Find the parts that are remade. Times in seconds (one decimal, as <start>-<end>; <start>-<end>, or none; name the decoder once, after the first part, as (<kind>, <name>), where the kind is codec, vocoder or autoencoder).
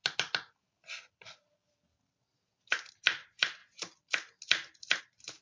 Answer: 2.9-3.6 (vocoder, BigVGAN v2); 5.0-5.4